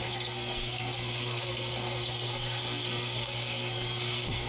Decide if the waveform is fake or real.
fake